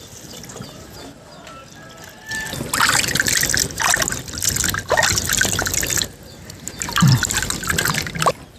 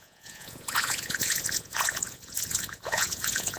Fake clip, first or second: second